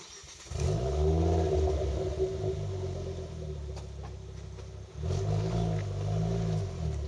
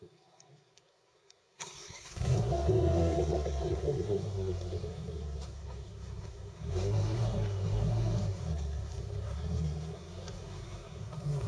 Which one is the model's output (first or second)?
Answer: second